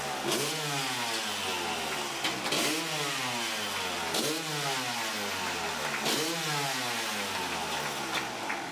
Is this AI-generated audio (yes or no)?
no